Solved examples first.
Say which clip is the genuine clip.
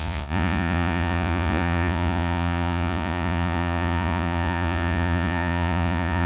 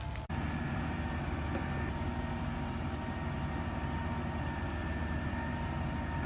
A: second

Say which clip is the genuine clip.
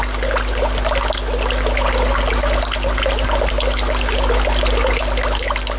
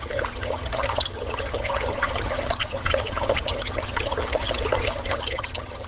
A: first